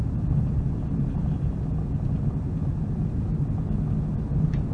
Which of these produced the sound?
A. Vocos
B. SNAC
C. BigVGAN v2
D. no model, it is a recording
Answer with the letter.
D